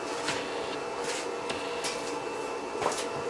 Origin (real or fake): real